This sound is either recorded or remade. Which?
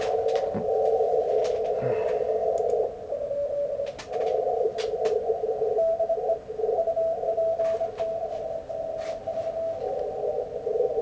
recorded